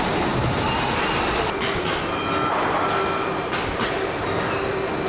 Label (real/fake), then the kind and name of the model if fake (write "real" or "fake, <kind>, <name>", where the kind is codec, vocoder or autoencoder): real